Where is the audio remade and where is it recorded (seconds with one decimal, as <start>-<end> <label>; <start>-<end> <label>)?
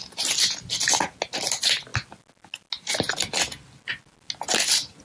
0.0-5.0 recorded